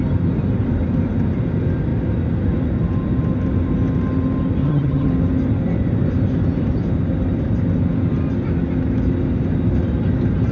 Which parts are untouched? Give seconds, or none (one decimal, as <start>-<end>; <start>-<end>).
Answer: 0.0-4.6; 5.1-10.5